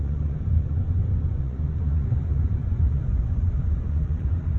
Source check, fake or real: fake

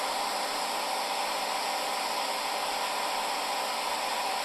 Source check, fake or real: real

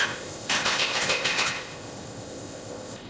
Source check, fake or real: fake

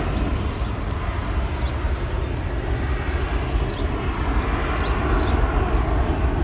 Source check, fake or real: real